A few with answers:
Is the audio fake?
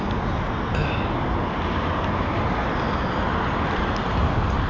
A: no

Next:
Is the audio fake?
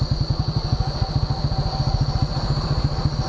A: no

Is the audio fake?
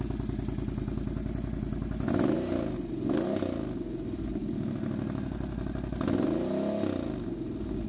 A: no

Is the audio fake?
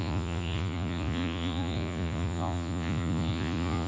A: yes